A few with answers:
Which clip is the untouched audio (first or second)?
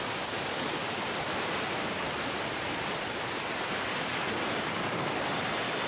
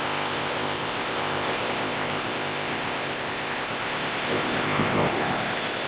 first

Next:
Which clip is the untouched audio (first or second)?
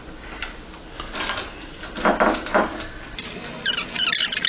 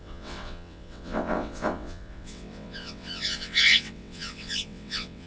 first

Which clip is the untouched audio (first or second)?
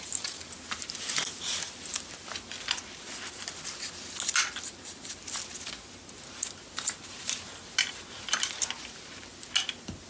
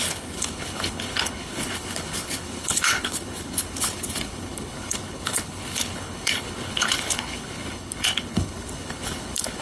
first